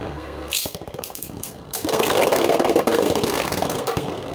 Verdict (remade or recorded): remade